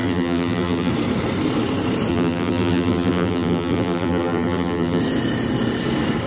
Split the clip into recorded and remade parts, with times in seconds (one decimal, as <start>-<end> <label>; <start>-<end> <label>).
0.0-0.9 remade; 0.9-2.1 recorded; 2.1-5.0 remade; 5.0-6.3 recorded